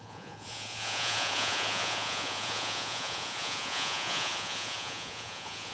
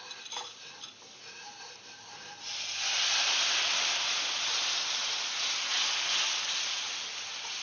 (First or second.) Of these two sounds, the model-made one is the first